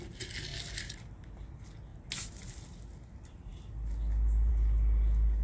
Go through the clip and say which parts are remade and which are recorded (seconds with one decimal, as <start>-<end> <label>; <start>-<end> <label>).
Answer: 0.0-1.9 recorded; 1.9-2.8 remade; 2.8-5.4 recorded